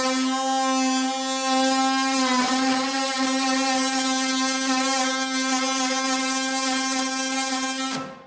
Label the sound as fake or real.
real